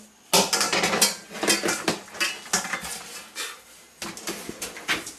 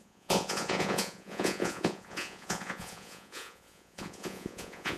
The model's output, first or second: second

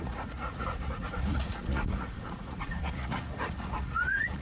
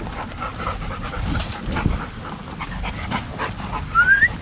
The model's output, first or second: first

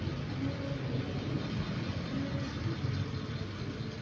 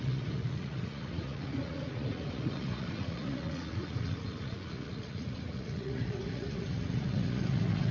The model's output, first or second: second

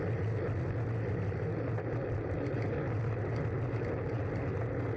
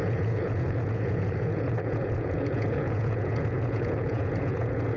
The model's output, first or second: second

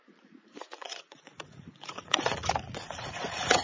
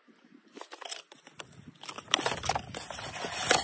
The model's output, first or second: first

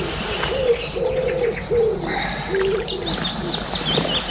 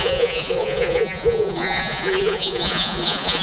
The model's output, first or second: second